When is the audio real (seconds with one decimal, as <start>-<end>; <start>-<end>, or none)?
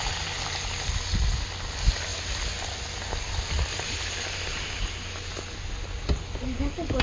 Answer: 0.0-7.0